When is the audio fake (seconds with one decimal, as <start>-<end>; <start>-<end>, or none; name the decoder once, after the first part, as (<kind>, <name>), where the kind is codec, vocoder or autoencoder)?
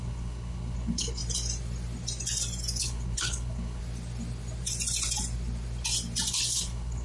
0.0-1.2 (codec, HILCodec); 2.8-3.8; 6.3-7.0